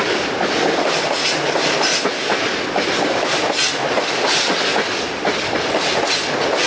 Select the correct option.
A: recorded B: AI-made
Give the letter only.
A